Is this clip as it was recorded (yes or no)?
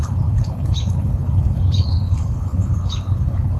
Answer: no